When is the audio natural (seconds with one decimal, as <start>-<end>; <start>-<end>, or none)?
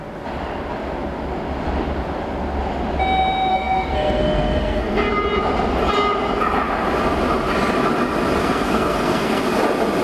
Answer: 0.0-3.5; 5.1-8.4; 9.4-10.0